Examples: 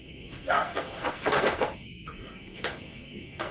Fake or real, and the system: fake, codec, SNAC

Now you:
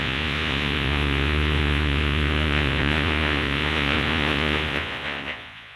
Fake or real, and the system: fake, vocoder, Vocos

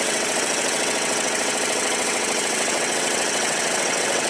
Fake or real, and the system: fake, vocoder, WaveNeXt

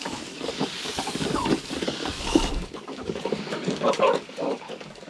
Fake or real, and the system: fake, codec, DAC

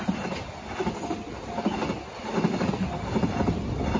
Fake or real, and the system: real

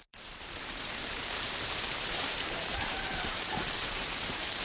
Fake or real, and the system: fake, vocoder, BigVGAN v2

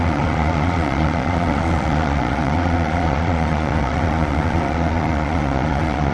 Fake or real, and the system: fake, vocoder, Vocos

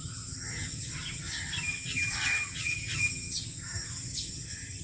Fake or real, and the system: fake, vocoder, HiFi-GAN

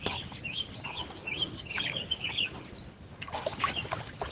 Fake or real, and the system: fake, codec, DAC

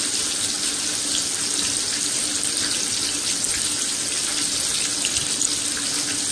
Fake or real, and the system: real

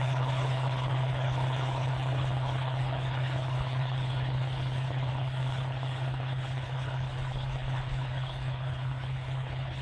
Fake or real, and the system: fake, codec, HILCodec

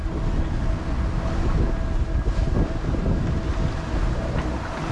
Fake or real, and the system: real